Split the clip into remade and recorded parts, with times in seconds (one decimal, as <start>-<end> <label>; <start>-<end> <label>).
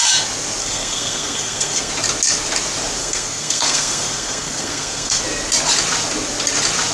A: 0.0-0.6 recorded; 0.6-1.9 remade; 1.9-3.0 recorded; 3.0-5.2 remade; 5.2-6.9 recorded